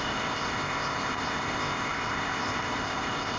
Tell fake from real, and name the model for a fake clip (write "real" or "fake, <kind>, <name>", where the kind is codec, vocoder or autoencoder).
fake, codec, ZipCodec